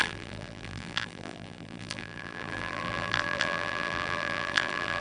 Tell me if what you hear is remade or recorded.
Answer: remade